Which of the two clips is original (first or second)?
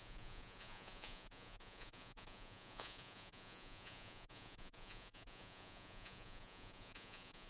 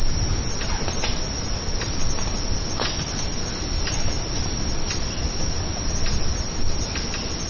second